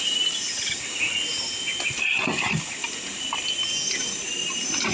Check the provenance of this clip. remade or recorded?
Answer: recorded